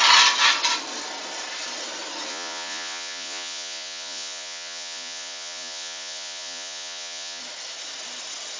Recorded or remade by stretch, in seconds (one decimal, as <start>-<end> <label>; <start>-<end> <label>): 0.0-2.3 recorded; 2.3-7.4 remade; 7.4-8.6 recorded